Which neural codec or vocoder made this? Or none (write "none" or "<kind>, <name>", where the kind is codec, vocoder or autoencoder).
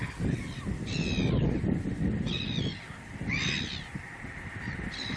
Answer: none